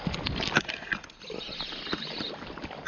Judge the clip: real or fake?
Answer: real